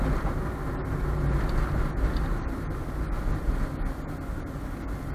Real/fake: real